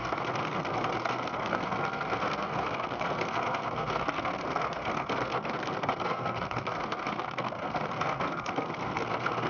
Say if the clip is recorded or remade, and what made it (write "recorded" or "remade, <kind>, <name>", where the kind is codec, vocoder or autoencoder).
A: remade, codec, SNAC